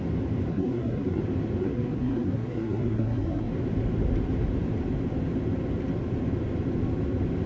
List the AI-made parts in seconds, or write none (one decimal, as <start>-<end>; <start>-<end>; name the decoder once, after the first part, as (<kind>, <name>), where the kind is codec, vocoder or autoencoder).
0.5-1.2 (codec, SNAC); 1.6-3.5